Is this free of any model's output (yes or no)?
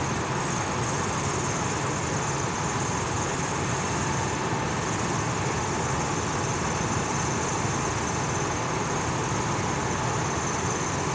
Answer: yes